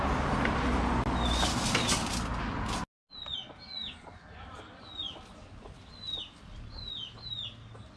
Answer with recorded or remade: recorded